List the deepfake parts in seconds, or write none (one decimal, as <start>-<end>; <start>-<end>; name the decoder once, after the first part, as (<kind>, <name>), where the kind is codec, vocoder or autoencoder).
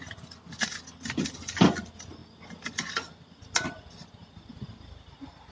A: none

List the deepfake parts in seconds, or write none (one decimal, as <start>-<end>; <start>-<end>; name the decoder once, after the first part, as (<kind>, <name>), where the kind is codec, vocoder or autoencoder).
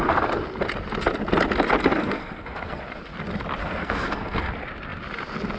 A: 2.0-2.8 (codec, SNAC); 3.6-4.5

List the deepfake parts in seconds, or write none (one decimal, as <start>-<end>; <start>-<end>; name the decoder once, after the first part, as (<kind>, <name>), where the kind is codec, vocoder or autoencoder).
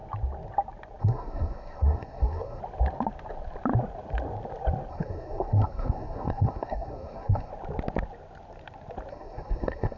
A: 1.0-2.6 (codec, SNAC); 4.9-7.5; 9.1-10.0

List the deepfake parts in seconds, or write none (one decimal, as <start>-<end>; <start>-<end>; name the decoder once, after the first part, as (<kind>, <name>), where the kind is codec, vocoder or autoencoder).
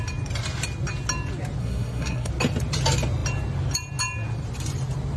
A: 1.6-2.3 (codec, SNAC)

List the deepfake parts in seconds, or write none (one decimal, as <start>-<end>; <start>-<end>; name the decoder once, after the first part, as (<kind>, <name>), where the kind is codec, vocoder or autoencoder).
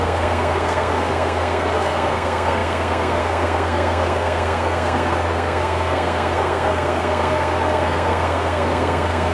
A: 0.0-9.3 (codec, SNAC)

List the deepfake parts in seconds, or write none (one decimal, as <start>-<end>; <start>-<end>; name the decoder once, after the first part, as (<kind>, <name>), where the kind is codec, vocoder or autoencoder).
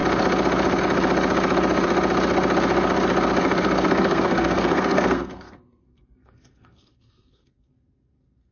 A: 3.4-8.5 (codec, SNAC)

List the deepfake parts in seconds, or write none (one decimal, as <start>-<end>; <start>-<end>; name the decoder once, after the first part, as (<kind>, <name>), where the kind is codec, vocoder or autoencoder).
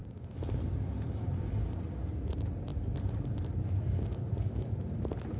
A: none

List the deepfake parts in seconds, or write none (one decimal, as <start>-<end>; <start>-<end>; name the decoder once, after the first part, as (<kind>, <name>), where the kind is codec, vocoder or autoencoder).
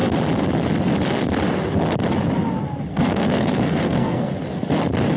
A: 2.9-4.3 (codec, SNAC)